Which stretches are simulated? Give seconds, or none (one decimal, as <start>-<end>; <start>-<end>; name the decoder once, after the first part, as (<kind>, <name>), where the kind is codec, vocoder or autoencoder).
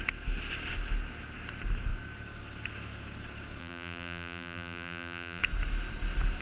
3.6-5.4 (vocoder, BigVGAN v2)